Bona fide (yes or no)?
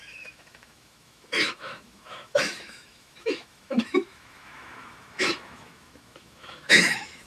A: no